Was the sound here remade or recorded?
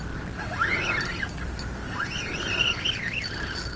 recorded